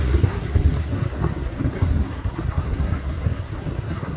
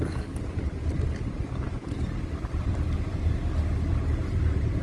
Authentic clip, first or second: second